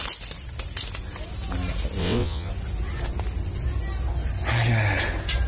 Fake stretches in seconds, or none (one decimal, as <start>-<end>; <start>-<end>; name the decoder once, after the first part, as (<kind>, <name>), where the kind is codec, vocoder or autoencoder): 2.0-2.5 (vocoder, WaveNeXt)